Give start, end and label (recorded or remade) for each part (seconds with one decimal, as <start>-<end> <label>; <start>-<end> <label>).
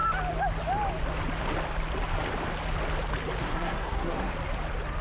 0.0-3.4 recorded; 3.4-4.3 remade; 4.3-5.0 recorded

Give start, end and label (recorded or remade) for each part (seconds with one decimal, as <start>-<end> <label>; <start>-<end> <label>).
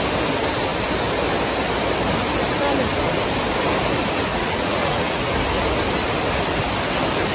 0.0-4.3 recorded; 4.3-5.2 remade; 5.2-7.3 recorded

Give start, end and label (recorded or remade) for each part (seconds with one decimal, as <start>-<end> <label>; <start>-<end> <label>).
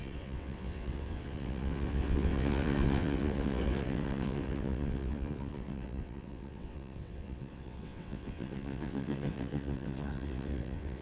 0.0-11.0 remade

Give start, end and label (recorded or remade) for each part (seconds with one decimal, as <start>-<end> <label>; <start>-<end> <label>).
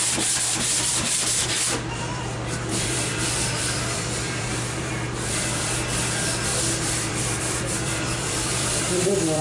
0.0-9.4 remade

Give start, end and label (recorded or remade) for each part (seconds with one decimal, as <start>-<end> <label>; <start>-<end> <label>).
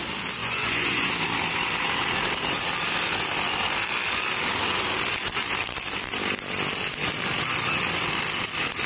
0.0-0.4 recorded; 0.4-1.1 remade; 1.1-8.9 recorded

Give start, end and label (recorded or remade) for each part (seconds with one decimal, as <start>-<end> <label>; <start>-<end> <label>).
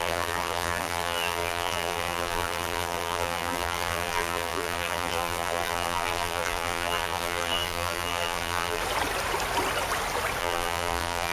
0.0-8.8 remade; 8.8-10.4 recorded; 10.4-11.3 remade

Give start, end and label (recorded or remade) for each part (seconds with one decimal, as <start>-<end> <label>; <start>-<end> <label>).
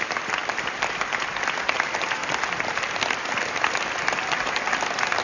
0.0-5.2 remade